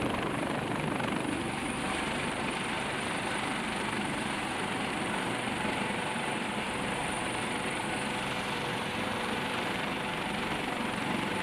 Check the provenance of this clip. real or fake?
fake